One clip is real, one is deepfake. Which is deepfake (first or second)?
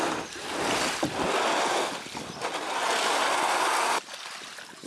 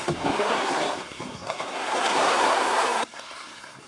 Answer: second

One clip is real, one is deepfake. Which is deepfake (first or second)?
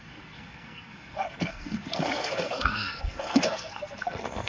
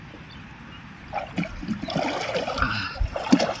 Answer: first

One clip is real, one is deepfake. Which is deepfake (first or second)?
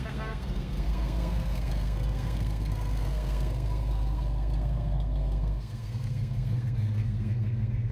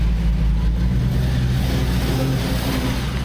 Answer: first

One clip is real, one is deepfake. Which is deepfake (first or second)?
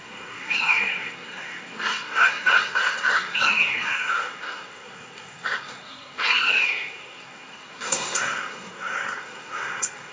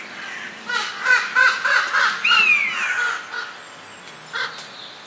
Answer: first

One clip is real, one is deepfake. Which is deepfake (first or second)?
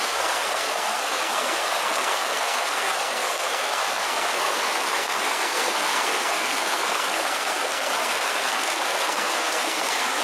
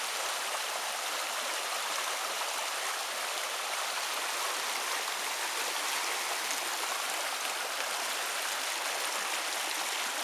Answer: first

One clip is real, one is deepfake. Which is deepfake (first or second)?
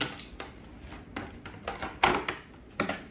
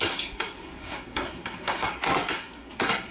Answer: second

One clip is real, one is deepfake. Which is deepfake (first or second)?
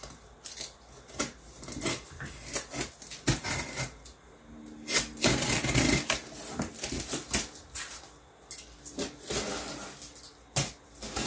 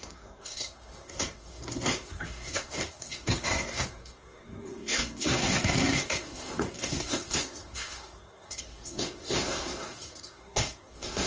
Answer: second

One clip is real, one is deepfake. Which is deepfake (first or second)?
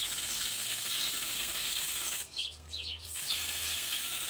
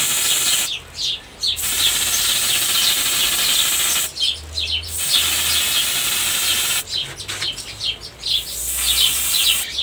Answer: first